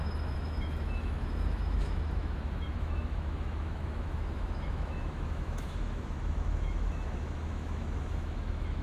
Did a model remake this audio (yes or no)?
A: yes